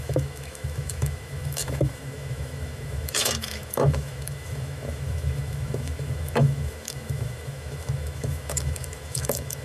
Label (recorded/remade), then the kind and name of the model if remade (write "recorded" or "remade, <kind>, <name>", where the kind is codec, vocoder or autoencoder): remade, autoencoder, DAC-VAE